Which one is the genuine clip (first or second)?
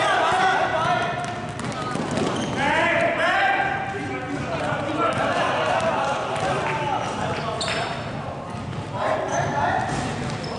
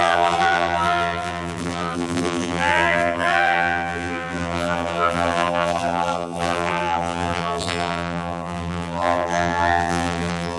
first